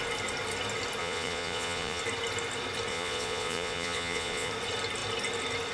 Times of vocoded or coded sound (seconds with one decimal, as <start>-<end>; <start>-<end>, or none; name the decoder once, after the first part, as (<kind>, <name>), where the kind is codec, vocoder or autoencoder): 1.0-2.0 (vocoder, Vocos); 2.9-4.5